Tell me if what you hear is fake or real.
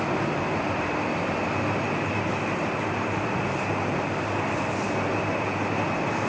real